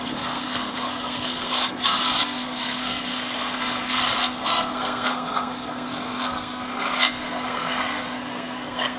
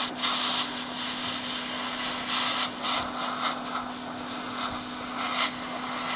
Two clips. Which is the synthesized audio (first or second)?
first